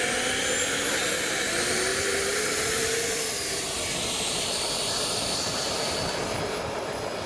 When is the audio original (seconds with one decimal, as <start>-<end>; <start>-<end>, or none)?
0.0-1.9; 6.1-7.3